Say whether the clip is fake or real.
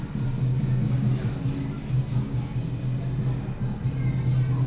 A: real